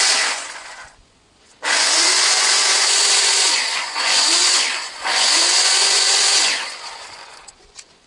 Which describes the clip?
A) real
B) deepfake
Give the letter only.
B